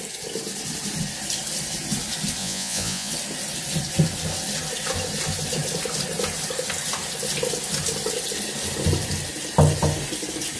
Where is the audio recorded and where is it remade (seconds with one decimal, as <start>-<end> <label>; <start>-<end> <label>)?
0.0-2.4 recorded; 2.4-3.1 remade; 3.1-10.6 recorded